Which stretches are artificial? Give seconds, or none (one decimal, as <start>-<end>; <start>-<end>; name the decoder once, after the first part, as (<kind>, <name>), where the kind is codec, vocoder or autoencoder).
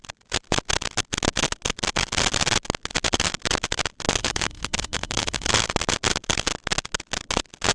4.2-5.5 (autoencoder, DAC-VAE)